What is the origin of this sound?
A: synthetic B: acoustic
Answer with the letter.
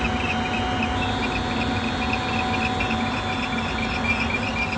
B